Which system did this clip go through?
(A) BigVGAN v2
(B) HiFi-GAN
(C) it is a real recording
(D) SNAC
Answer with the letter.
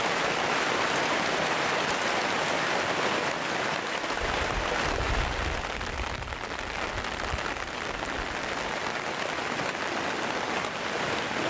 C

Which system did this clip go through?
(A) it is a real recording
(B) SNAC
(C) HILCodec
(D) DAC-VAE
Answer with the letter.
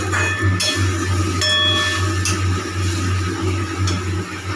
A